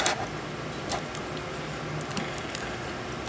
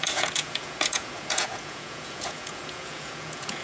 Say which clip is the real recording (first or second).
first